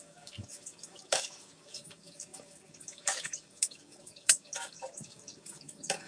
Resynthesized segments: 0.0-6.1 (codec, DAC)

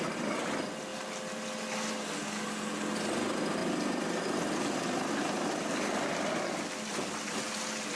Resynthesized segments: none

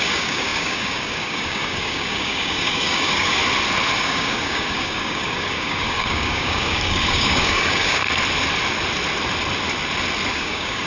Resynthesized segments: 0.0-3.4 (codec, DAC); 4.0-8.0; 10.3-10.9

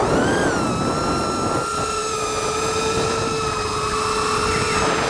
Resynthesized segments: none

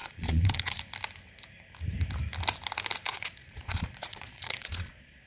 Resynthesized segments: 0.0-0.8 (vocoder, Vocos); 3.1-5.3

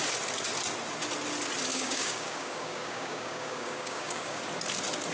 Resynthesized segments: 1.7-4.4 (codec, DAC)

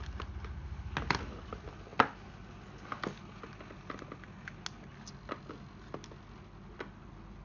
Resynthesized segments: none